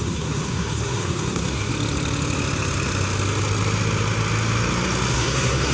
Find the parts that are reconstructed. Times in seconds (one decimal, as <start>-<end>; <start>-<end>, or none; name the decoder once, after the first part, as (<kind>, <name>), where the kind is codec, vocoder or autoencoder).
0.0-1.7 (codec, SNAC); 5.1-5.7